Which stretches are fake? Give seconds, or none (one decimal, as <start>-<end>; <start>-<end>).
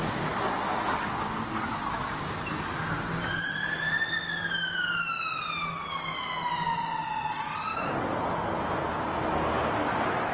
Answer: none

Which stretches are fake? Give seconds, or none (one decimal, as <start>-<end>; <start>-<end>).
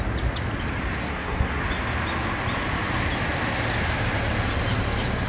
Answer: 1.0-1.6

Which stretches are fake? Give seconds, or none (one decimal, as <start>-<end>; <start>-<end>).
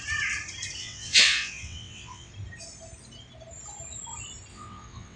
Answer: 0.8-2.3; 4.5-5.2